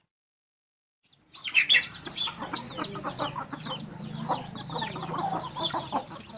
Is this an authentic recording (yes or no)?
yes